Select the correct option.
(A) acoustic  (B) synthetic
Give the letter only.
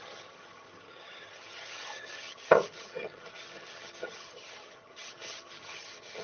B